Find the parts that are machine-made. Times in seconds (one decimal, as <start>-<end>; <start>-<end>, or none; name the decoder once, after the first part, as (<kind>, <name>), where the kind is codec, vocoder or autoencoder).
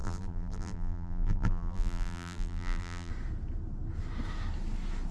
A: 0.0-3.1 (vocoder, BigVGAN v2)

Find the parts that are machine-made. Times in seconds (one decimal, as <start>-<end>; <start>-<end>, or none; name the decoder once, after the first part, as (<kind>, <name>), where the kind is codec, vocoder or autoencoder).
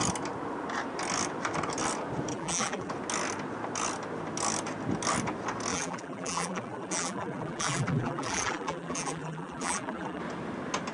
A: 2.3-2.9 (vocoder, BigVGAN v2); 5.7-10.2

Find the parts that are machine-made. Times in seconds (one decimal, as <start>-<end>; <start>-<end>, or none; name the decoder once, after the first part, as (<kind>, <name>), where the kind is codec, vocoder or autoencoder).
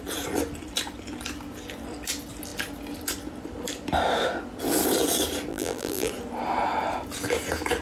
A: 5.5-6.1 (vocoder, BigVGAN v2)